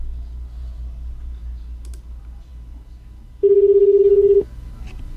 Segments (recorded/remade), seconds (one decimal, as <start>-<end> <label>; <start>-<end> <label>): 0.0-5.2 recorded